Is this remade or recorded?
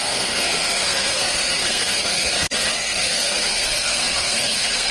remade